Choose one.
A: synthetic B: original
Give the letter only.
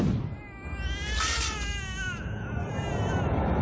B